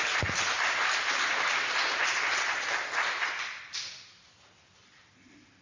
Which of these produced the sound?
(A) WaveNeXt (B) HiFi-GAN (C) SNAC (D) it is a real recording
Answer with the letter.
D